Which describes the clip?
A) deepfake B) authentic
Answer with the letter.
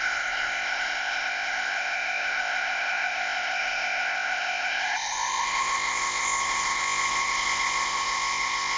A